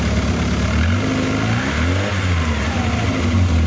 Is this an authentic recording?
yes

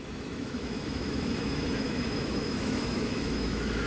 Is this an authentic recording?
no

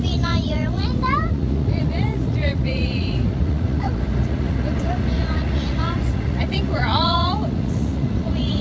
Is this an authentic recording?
no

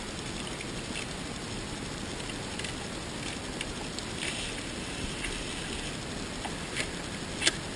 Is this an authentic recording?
yes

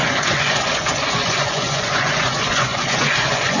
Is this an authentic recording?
no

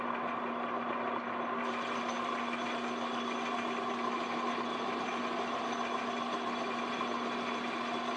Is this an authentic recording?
yes